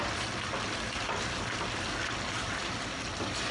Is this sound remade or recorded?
recorded